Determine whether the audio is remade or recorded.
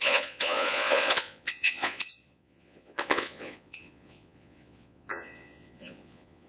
remade